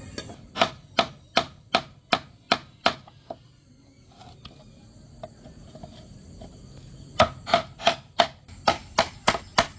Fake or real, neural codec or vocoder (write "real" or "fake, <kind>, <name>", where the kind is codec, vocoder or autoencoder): real